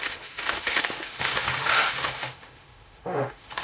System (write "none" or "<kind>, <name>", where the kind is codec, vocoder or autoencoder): autoencoder, DAC-VAE